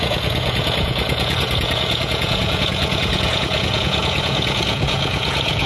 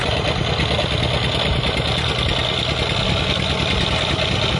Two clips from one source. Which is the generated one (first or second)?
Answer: first